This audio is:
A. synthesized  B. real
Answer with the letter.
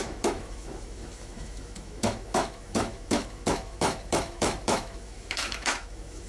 A